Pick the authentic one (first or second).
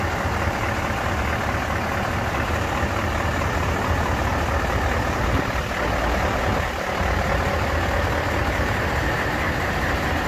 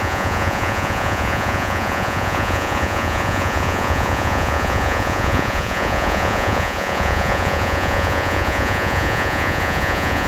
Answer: first